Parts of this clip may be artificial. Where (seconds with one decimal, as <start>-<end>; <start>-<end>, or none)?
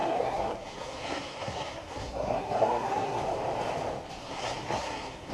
0.0-3.2; 4.2-5.3